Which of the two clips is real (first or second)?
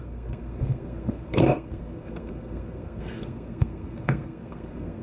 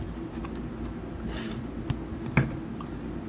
second